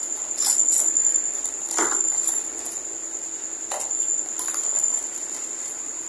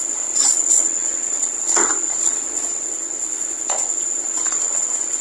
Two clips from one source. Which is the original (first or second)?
first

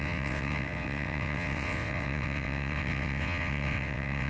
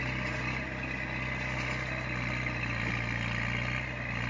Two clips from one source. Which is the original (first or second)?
second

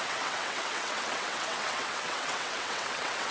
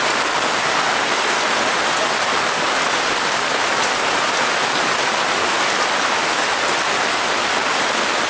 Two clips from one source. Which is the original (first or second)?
second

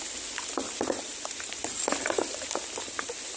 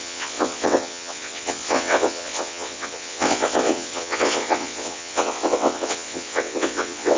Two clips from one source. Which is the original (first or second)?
first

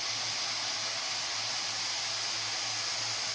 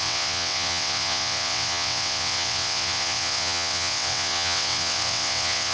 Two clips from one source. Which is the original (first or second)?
first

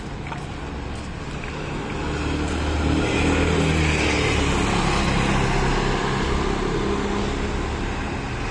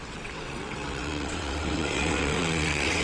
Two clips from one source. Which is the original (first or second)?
first